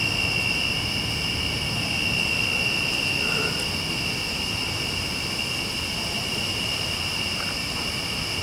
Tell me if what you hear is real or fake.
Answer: real